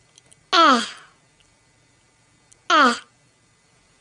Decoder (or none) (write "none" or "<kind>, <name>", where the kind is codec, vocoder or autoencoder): none